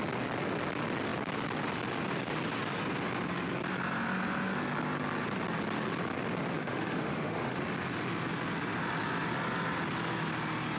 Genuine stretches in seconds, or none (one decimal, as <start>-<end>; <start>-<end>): 0.0-6.6; 7.6-10.8